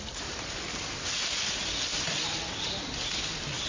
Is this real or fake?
real